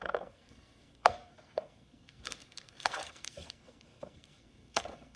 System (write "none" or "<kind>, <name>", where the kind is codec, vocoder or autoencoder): codec, SNAC